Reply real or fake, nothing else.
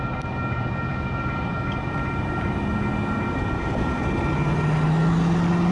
real